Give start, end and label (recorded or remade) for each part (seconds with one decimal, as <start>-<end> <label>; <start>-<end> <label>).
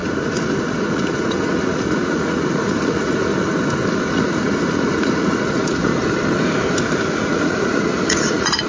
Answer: 0.0-3.3 remade; 3.3-3.9 recorded; 3.9-5.9 remade; 5.9-7.0 recorded; 7.0-8.7 remade